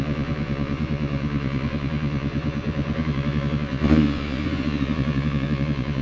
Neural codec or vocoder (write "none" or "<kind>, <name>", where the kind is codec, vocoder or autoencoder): vocoder, Vocos